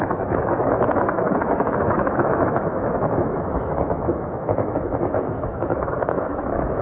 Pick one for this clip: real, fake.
fake